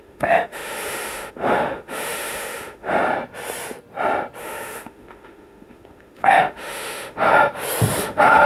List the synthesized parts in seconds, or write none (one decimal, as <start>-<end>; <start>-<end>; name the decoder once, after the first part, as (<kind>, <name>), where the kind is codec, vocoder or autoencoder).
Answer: 0.0-3.0 (autoencoder, DAC-VAE); 4.4-7.3; 8.0-8.5